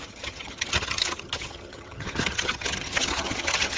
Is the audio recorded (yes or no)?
no